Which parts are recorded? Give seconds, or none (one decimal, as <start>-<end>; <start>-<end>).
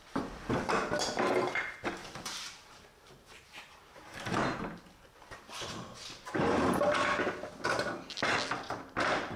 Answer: 0.0-2.0; 6.8-9.4